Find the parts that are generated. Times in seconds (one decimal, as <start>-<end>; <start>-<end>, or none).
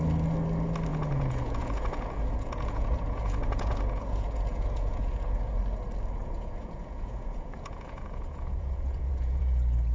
0.9-5.6; 6.2-9.4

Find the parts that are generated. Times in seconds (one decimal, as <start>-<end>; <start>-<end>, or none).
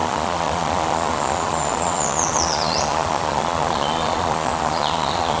0.0-5.4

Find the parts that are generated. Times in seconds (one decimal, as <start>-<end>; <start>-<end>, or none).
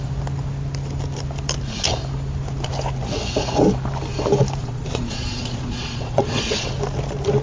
4.6-6.7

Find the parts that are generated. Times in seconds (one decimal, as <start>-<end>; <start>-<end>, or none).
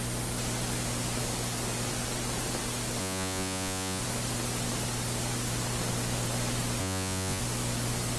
3.0-4.0; 6.8-7.4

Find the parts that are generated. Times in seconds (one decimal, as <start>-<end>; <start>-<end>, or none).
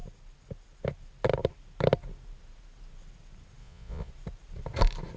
3.6-4.1